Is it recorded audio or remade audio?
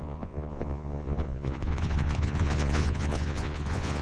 remade